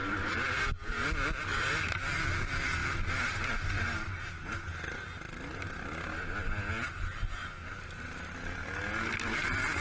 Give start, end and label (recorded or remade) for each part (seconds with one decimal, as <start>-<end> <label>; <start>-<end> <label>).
0.0-9.8 recorded